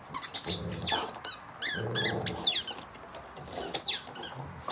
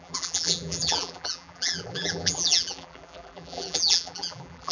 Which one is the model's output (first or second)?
second